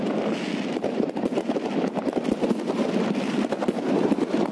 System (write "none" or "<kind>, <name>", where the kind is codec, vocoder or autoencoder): none